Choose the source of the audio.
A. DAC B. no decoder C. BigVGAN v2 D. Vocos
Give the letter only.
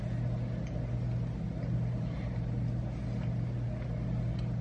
B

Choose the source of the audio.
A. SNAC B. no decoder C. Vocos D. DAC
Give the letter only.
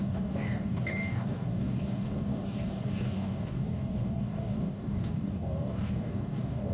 D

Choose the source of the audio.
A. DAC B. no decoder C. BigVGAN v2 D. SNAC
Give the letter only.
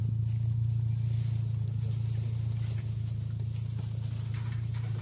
B